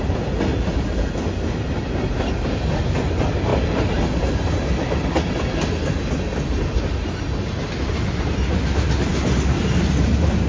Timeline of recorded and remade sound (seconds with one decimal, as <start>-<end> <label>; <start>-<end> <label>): 0.0-10.5 recorded